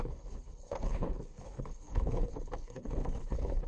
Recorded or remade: remade